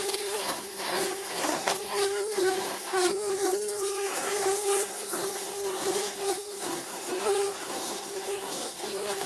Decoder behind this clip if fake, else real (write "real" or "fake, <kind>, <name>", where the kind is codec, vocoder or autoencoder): fake, codec, SNAC